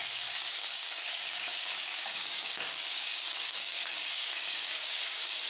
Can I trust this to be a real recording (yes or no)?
no